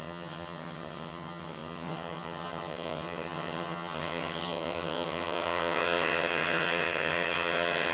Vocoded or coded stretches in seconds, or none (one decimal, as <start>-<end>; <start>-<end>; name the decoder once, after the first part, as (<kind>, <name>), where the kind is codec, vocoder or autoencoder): 0.0-7.9 (vocoder, HiFi-GAN)